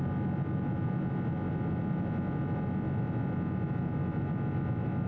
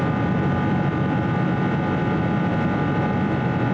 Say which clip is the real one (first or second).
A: first